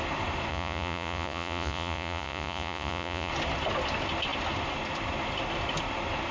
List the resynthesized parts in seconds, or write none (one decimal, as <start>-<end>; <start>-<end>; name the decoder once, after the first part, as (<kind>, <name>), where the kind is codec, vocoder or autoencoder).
0.5-3.3 (vocoder, Vocos)